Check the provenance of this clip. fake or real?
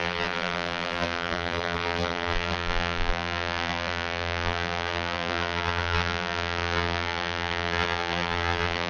fake